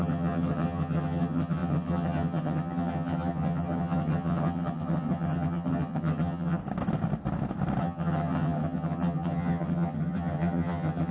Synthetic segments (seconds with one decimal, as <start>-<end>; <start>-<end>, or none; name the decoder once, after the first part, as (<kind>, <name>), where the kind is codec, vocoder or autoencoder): 0.0-6.6 (vocoder, HiFi-GAN); 7.8-11.1